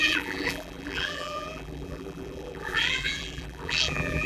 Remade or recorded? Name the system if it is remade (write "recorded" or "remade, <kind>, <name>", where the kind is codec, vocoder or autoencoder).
remade, vocoder, BigVGAN v2